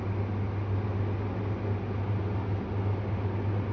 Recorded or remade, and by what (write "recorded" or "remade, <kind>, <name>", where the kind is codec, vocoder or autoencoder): recorded